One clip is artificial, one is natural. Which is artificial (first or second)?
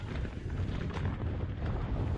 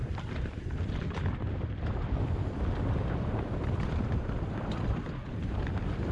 second